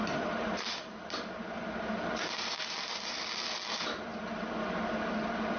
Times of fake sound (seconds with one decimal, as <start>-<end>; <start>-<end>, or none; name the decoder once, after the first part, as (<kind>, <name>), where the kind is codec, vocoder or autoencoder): 0.0-3.4 (vocoder, BigVGAN v2)